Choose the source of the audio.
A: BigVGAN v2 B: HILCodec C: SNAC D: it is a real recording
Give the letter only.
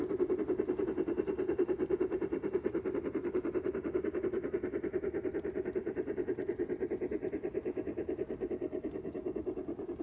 D